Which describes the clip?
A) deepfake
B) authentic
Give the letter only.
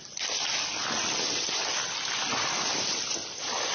B